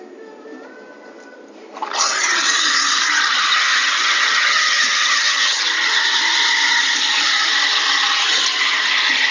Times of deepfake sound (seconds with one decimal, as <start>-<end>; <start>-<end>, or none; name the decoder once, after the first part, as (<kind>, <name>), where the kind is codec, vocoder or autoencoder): 3.5-5.6 (vocoder, HiFi-GAN)